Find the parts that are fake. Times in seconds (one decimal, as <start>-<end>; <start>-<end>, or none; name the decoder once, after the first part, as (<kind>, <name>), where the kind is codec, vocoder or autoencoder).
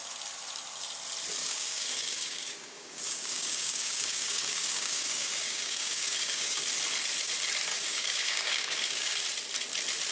1.4-6.6 (codec, DAC); 7.7-9.1